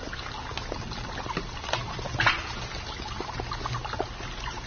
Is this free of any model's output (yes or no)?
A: yes